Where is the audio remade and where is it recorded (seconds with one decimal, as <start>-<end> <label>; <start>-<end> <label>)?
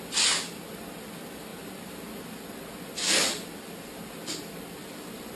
0.0-5.4 recorded